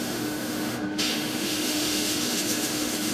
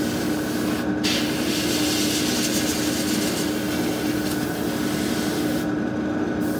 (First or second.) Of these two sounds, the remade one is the first